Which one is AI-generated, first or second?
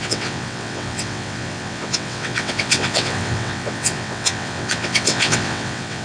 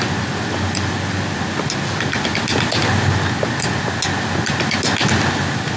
first